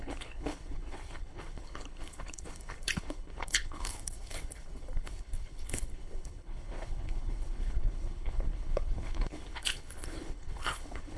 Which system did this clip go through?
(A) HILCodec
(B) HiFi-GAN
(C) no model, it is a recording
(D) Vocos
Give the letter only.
A